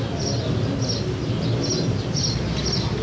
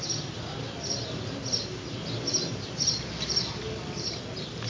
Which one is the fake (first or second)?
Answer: second